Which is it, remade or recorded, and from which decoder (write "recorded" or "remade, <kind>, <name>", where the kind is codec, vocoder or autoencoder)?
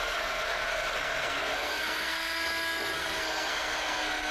remade, codec, SNAC